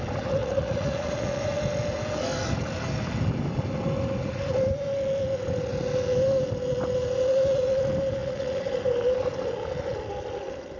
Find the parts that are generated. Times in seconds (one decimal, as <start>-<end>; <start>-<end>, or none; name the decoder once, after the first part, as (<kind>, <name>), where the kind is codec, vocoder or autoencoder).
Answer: 0.4-1.6 (vocoder, Vocos); 8.2-8.8